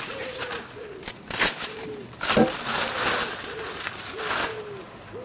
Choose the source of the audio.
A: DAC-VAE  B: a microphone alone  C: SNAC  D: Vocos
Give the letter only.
B